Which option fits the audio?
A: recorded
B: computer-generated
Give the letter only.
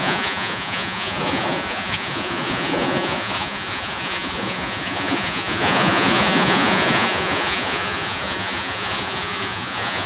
B